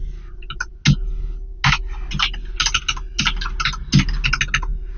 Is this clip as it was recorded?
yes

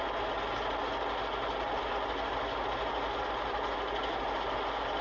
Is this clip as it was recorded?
yes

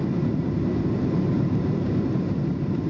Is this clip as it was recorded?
yes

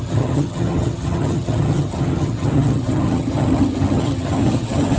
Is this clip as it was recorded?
no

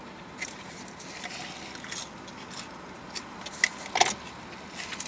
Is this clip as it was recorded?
yes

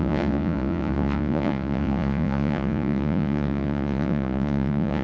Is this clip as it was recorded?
no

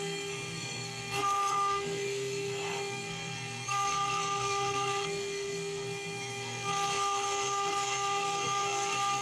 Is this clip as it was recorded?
no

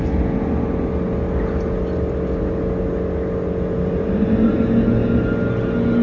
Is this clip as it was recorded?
yes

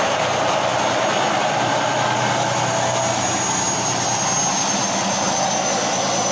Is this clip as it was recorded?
yes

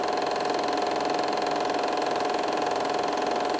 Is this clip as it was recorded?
yes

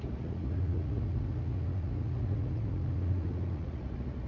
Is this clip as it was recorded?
no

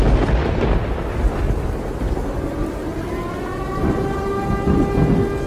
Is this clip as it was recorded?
yes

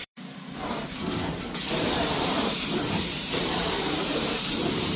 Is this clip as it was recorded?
no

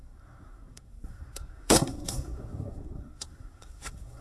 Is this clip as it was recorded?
no